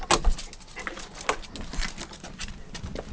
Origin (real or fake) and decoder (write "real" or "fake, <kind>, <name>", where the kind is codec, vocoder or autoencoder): real